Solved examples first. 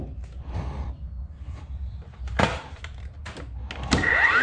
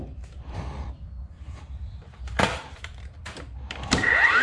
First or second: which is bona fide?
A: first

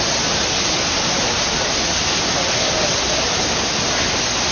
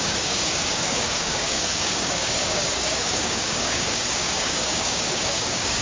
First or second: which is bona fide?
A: first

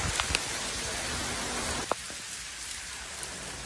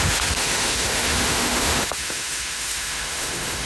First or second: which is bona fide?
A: first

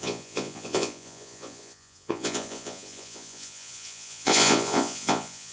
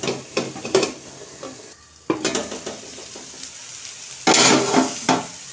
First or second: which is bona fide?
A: second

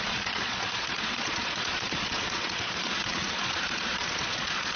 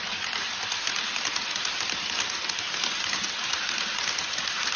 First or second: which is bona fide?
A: second